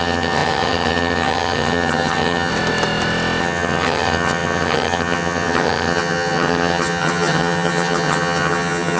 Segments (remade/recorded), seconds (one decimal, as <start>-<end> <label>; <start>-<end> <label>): 0.0-2.5 remade; 2.5-3.4 recorded; 3.4-9.0 remade